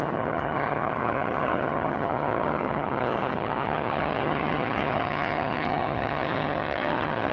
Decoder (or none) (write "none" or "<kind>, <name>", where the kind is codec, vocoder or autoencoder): vocoder, HiFi-GAN